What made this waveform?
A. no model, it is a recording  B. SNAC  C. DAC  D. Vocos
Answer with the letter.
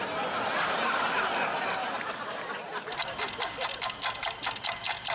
A